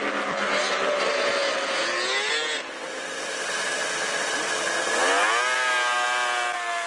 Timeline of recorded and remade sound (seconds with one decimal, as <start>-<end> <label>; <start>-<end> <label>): 0.0-6.9 recorded